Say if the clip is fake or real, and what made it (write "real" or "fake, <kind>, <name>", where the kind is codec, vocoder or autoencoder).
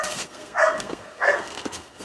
fake, codec, SNAC